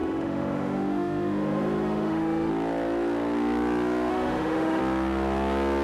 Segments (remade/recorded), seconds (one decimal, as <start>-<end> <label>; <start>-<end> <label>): 0.0-2.5 remade; 2.5-4.1 recorded; 4.1-4.8 remade; 4.8-5.8 recorded